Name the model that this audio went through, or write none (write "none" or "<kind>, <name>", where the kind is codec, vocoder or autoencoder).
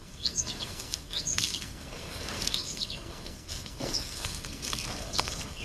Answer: codec, SNAC